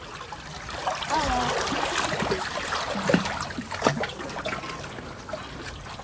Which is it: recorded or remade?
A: recorded